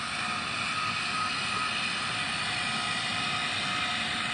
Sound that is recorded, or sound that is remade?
recorded